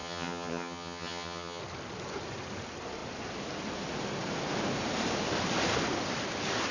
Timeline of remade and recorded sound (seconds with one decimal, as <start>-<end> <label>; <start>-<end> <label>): 0.0-1.6 remade; 1.6-6.7 recorded